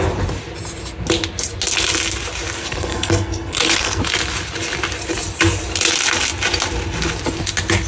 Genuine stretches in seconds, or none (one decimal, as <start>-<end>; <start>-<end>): 0.0-2.6; 4.0-7.9